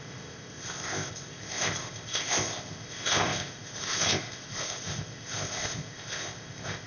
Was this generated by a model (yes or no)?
yes